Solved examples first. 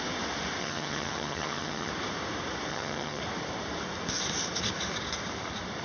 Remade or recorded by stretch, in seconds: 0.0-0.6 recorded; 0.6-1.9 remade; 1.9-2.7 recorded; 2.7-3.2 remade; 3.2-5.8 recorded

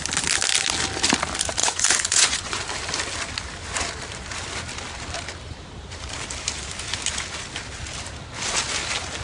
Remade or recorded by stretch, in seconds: 0.0-1.6 recorded; 1.6-2.6 remade; 2.6-9.2 recorded

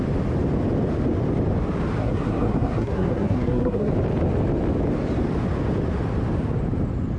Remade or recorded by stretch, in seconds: 0.0-2.0 recorded; 2.0-3.9 remade; 3.9-7.2 recorded

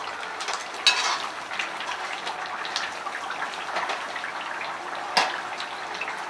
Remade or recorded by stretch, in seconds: 0.0-6.3 recorded

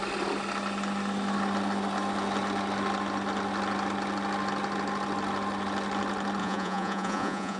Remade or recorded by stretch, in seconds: 0.0-6.4 recorded; 6.4-7.6 remade

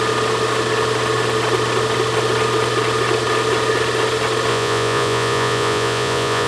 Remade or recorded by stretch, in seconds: 0.0-4.5 recorded; 4.5-6.5 remade